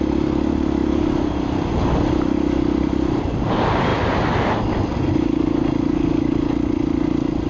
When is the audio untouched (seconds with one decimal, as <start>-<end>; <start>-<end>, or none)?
0.0-7.5